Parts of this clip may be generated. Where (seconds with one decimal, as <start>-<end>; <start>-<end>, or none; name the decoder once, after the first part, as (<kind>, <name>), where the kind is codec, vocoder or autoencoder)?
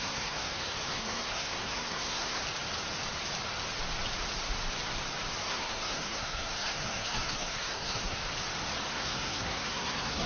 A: 0.0-2.4 (codec, SNAC); 5.4-8.2; 8.9-10.3